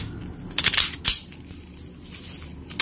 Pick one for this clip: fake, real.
real